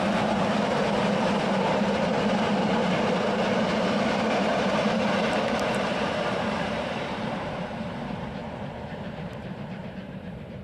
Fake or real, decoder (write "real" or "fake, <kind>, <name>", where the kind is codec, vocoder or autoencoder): fake, vocoder, BigVGAN v2